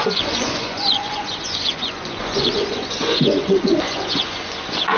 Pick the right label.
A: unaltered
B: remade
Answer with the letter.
B